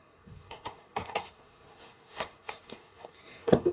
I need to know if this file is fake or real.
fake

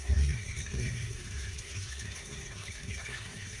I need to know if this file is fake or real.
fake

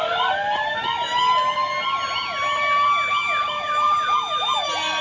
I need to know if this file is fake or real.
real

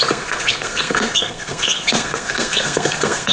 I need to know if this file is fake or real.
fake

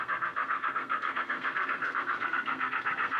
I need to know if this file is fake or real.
fake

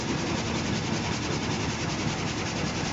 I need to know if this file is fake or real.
real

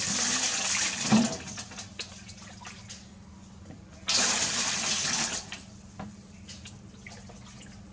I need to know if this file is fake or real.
real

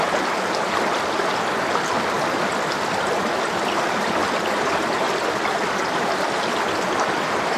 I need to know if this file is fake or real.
real